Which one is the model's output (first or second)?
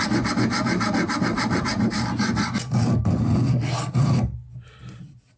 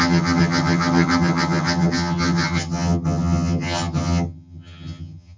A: second